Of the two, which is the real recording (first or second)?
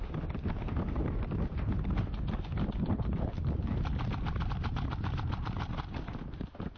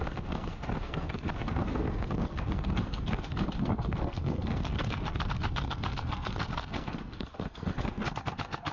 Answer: first